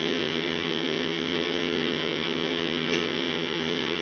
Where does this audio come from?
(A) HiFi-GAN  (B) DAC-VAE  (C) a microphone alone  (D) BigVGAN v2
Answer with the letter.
A